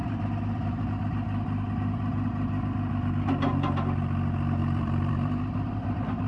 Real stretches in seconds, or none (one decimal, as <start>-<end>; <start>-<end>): 0.8-4.6; 5.4-6.3